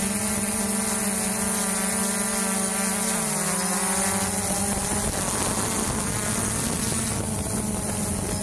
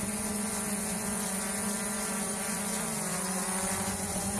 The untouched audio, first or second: first